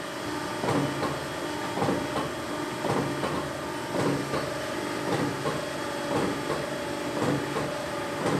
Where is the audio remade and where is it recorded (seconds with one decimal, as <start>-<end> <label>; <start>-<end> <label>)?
0.0-8.4 recorded